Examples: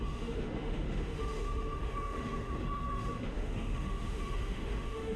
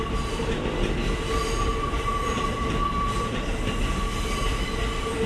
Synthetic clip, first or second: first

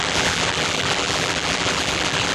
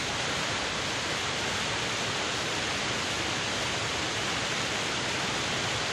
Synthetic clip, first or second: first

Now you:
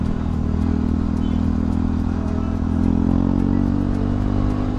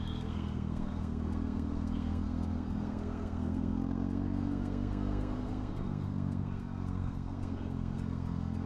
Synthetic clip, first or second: second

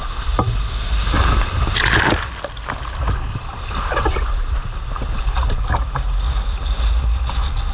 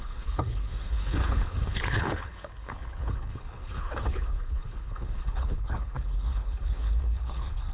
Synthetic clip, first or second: second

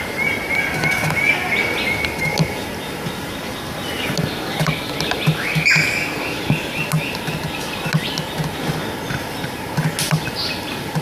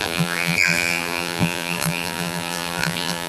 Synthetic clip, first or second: second